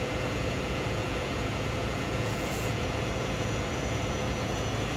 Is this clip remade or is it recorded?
remade